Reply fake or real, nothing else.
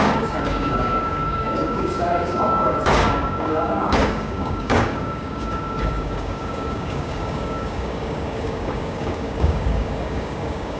fake